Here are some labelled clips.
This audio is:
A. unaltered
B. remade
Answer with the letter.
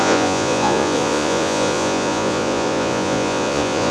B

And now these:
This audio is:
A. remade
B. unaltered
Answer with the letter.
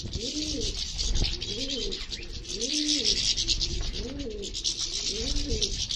B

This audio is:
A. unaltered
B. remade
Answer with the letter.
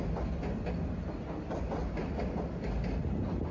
A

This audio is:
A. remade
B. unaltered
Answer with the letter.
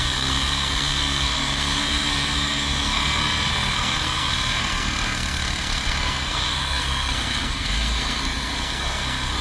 A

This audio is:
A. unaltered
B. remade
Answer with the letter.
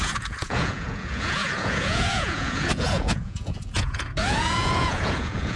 B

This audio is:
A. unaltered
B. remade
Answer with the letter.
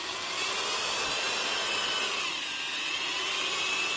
A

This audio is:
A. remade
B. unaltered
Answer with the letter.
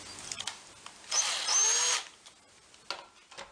B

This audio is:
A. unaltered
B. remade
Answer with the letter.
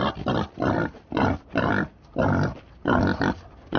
A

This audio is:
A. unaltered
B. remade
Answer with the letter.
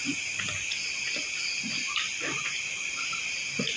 A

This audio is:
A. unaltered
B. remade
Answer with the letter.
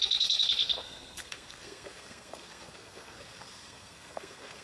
B